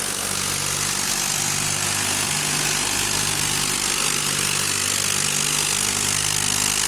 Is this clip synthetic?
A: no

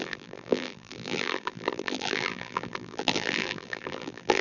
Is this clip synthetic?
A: yes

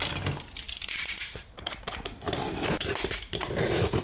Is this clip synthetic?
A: yes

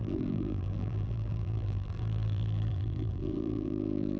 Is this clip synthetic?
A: yes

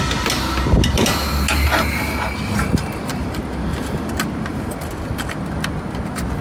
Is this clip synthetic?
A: no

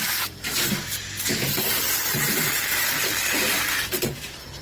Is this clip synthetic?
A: yes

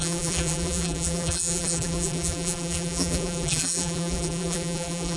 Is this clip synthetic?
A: yes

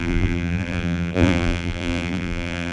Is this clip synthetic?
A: yes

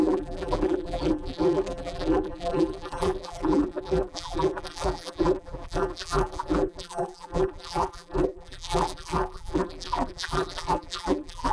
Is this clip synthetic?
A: yes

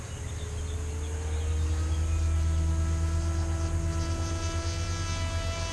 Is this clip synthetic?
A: no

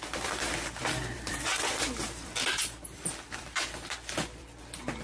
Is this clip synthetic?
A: yes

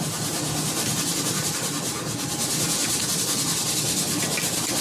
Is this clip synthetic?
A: no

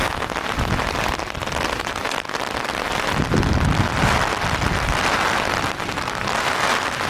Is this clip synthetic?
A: no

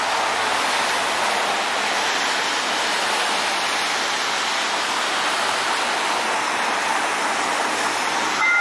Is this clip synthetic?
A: no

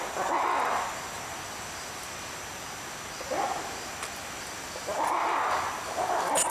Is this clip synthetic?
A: no